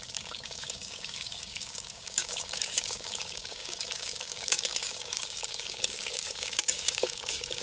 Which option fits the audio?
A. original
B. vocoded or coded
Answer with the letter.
B